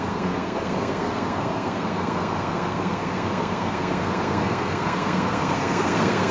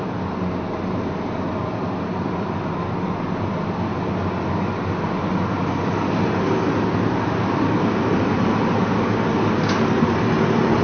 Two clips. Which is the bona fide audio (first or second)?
second